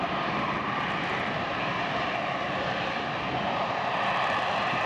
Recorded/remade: recorded